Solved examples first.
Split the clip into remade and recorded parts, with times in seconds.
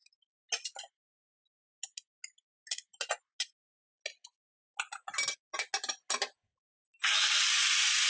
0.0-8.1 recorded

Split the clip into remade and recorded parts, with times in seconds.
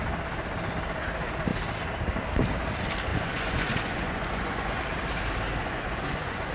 0.0-3.1 recorded; 3.1-4.8 remade; 4.8-5.6 recorded; 5.6-6.5 remade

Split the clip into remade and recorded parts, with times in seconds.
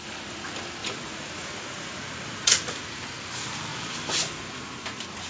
0.0-0.8 recorded; 0.8-3.0 remade; 3.0-5.3 recorded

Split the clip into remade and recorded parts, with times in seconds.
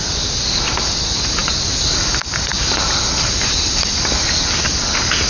0.0-5.3 recorded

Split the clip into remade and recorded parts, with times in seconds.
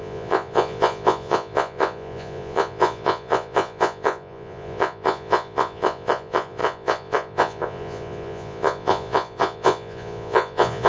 0.0-10.9 remade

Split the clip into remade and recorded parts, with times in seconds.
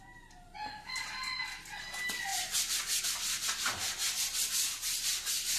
0.0-5.6 recorded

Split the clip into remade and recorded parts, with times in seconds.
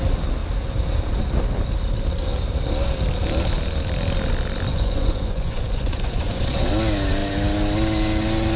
0.0-4.7 recorded; 4.7-6.7 remade; 6.7-8.6 recorded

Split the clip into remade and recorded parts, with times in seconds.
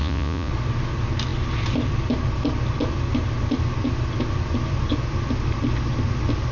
0.0-0.5 remade; 0.5-6.5 recorded